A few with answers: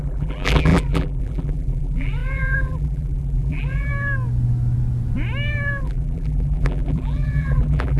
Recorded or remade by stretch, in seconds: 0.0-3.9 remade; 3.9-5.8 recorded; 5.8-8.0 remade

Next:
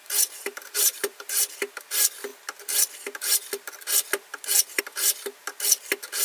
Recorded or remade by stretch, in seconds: 0.0-1.4 remade; 1.4-6.2 recorded

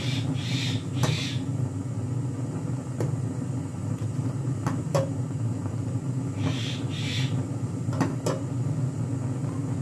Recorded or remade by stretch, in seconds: 0.0-3.7 recorded; 3.7-6.2 remade; 6.2-9.8 recorded

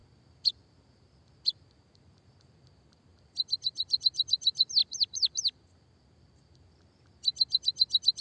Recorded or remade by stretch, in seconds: 0.0-1.0 remade; 1.0-3.1 recorded; 3.1-4.0 remade; 4.0-4.8 recorded; 4.8-6.6 remade; 6.6-8.2 recorded

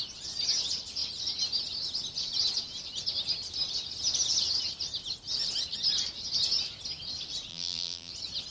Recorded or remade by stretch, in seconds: 0.0-7.5 recorded; 7.5-8.1 remade; 8.1-8.5 recorded

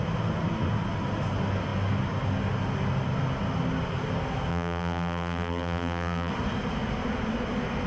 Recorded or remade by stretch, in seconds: 0.0-4.5 recorded; 4.5-6.3 remade; 6.3-7.9 recorded

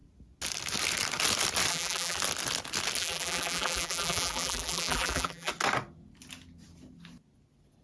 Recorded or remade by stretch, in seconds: 0.0-1.7 recorded; 1.7-2.2 remade; 2.2-3.0 recorded; 3.0-5.5 remade; 5.5-7.8 recorded